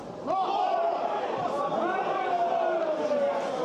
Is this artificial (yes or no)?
yes